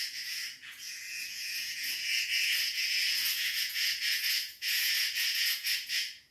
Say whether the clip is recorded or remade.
remade